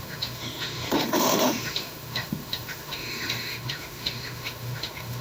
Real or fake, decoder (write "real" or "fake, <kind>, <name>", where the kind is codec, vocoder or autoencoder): fake, autoencoder, DAC-VAE